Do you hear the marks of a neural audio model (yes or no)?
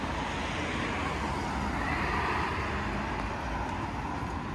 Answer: no